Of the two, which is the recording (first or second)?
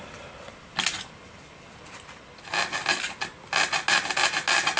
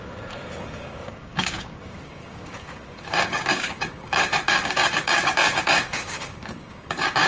first